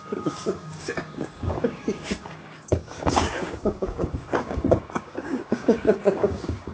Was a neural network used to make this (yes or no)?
yes